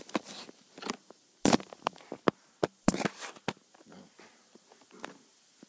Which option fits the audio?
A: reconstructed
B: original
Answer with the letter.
B